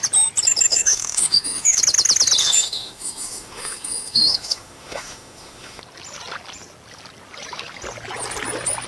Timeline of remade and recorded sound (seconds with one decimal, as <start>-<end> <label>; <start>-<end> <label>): 0.0-0.7 recorded; 0.7-1.8 remade; 1.8-2.4 recorded; 2.4-5.8 remade; 5.8-8.9 recorded